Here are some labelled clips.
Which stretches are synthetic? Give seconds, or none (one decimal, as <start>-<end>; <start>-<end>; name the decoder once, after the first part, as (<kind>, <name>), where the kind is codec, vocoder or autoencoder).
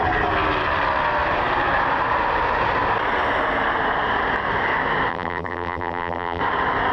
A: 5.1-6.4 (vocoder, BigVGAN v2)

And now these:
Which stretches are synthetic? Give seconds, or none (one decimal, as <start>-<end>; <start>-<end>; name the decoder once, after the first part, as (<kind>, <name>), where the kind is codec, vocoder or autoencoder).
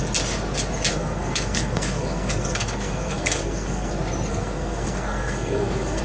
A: 0.9-3.9 (codec, SNAC); 4.3-6.0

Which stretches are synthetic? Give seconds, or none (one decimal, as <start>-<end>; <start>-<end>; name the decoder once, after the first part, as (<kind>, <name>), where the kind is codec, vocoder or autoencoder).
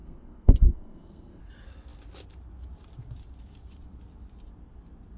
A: 0.0-1.4 (codec, SNAC)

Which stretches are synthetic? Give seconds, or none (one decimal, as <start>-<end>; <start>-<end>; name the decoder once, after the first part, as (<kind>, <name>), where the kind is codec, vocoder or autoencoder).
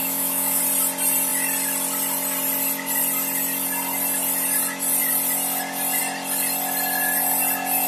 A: 0.0-0.6 (autoencoder, DAC-VAE)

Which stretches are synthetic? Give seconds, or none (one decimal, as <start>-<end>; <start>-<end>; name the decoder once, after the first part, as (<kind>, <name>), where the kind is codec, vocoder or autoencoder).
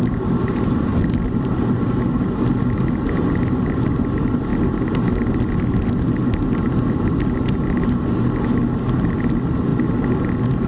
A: none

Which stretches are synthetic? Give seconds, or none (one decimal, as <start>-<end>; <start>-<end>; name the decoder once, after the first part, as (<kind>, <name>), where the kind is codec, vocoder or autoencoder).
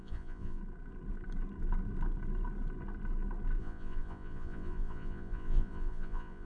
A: 0.0-0.6 (vocoder, Vocos); 3.6-6.5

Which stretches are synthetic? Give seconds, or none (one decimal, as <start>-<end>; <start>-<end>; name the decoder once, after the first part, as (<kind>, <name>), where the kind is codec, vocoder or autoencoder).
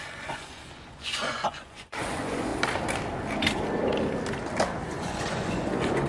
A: 0.0-2.5 (vocoder, Vocos); 4.9-6.1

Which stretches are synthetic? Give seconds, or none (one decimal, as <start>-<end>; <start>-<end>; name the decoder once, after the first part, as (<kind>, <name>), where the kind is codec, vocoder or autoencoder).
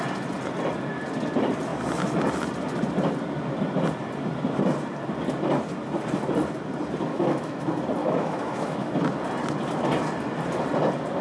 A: 7.1-7.6 (autoencoder, DAC-VAE); 8.0-9.0